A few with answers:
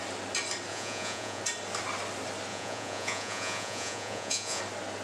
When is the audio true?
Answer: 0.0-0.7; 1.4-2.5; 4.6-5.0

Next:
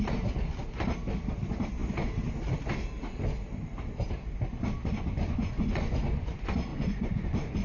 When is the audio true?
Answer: 0.0-4.8; 6.3-6.7

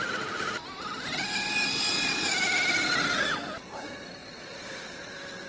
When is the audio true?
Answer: 0.0-4.2; 5.1-5.5

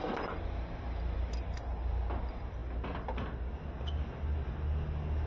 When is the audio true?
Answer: 0.0-5.3